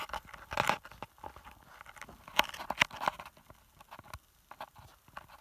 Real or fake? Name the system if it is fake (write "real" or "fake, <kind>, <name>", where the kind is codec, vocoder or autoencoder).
real